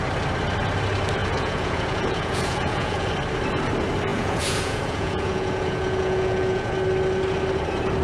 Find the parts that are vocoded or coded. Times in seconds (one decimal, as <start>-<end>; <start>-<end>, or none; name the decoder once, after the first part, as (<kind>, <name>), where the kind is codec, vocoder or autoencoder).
1.2-3.1 (vocoder, Vocos); 4.1-6.7